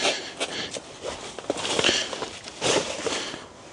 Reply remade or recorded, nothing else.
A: recorded